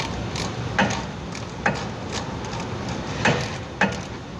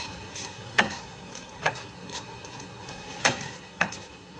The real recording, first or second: first